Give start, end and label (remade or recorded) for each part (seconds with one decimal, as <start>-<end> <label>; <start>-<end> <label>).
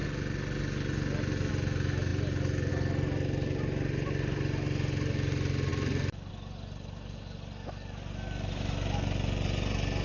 0.0-10.0 recorded